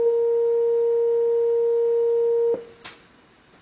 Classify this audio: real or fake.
real